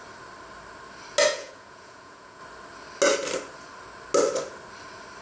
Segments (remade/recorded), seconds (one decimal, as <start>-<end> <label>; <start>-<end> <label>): 0.0-1.3 recorded; 1.3-2.4 remade; 2.4-5.2 recorded